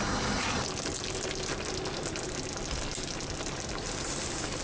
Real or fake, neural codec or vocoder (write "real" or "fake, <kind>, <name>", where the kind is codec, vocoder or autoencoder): real